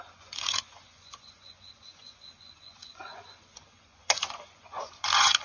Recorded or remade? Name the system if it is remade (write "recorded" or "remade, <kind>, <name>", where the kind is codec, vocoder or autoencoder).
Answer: remade, vocoder, Vocos